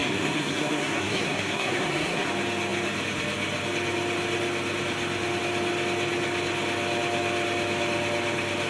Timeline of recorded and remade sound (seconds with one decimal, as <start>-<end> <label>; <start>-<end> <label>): 0.0-2.3 remade; 2.3-8.7 recorded